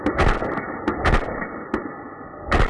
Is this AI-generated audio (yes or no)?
no